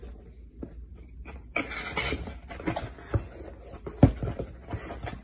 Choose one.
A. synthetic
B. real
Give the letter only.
B